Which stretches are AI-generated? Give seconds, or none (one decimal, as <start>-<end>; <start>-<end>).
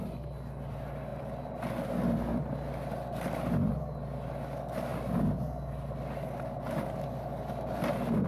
none